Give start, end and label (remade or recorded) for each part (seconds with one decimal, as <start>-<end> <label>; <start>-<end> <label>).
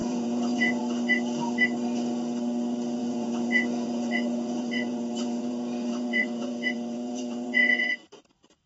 0.0-0.8 remade; 0.8-3.0 recorded; 3.0-7.9 remade; 7.9-8.7 recorded